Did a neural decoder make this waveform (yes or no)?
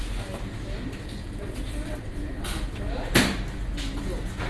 no